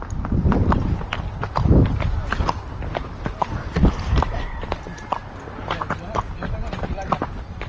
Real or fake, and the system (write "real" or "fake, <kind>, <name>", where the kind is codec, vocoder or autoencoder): real